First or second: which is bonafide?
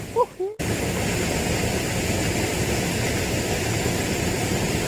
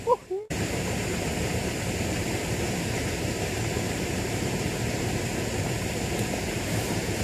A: first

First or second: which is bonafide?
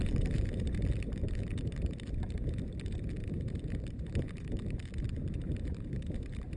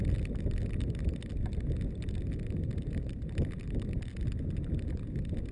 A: second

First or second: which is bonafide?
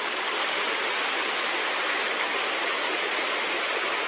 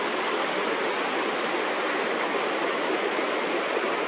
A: second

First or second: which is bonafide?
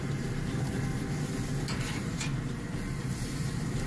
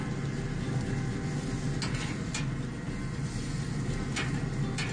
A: second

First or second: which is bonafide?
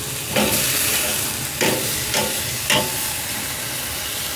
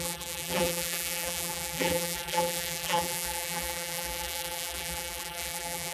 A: first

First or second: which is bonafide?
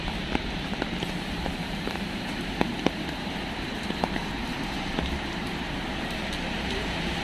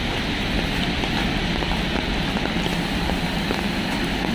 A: second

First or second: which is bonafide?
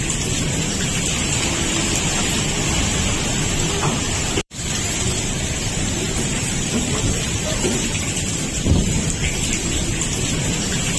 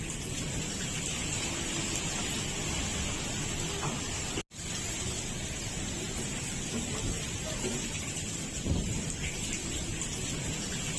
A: second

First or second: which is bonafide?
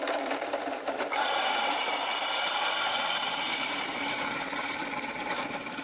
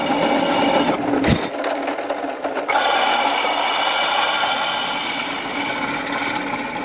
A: second